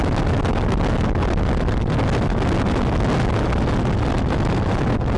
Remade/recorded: recorded